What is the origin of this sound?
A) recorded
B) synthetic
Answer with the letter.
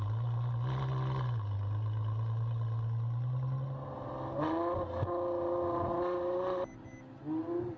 A